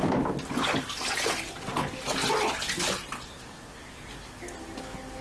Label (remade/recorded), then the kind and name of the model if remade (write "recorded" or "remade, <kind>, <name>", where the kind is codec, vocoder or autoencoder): recorded